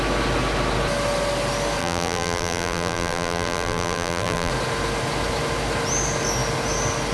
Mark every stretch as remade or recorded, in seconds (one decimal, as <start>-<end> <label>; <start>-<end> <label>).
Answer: 0.0-1.8 recorded; 1.8-4.5 remade; 4.5-7.1 recorded